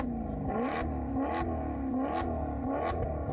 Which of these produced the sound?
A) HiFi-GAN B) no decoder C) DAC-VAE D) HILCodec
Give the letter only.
B